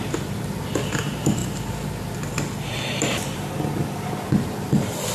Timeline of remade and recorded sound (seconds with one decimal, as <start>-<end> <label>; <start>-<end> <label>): 0.0-5.1 recorded

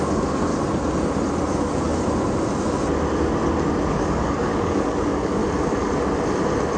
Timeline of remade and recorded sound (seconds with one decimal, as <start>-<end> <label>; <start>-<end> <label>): 0.0-0.5 remade; 0.5-1.5 recorded; 1.5-1.9 remade; 1.9-3.9 recorded; 3.9-5.4 remade; 5.4-6.8 recorded

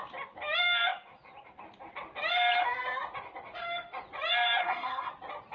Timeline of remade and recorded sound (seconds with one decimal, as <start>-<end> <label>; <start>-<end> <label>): 0.0-4.6 recorded; 4.6-5.1 remade; 5.1-5.5 recorded

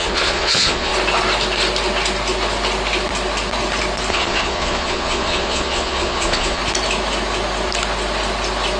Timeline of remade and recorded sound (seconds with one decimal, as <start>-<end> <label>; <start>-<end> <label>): 0.0-0.9 remade; 0.9-4.1 recorded; 4.1-6.6 remade; 6.6-8.8 recorded

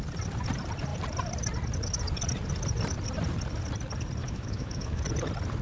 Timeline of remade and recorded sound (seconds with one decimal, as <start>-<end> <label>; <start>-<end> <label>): 0.0-4.2 recorded; 4.2-5.0 remade; 5.0-5.6 recorded

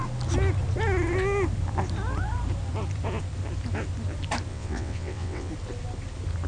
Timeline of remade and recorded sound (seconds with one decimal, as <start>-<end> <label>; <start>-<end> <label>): 0.0-4.5 recorded; 4.5-5.5 remade; 5.5-6.5 recorded

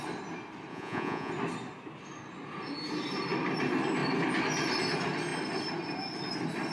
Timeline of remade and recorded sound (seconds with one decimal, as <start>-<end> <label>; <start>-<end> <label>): 0.0-0.7 recorded; 0.7-1.3 remade; 1.3-6.7 recorded

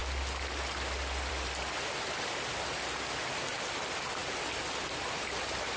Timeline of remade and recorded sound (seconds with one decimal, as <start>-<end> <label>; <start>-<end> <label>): 0.0-5.8 recorded